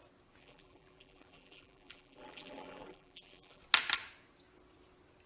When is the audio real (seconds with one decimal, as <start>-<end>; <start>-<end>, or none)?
0.0-0.4; 3.6-5.3